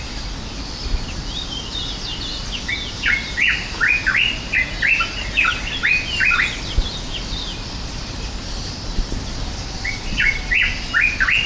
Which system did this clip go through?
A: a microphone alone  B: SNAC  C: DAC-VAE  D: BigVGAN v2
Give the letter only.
A